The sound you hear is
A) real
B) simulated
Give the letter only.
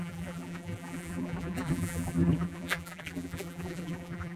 B